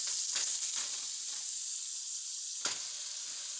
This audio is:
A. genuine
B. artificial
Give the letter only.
A